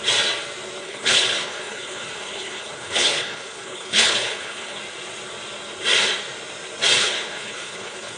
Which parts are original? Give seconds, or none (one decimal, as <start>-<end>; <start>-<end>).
0.0-0.8; 4.8-7.0